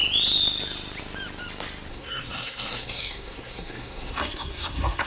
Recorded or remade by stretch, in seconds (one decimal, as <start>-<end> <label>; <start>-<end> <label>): 0.0-1.9 recorded; 1.9-5.1 remade